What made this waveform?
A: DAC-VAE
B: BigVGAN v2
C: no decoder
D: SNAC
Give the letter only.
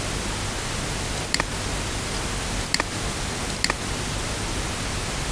C